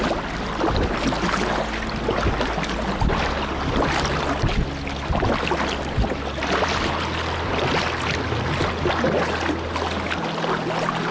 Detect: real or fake real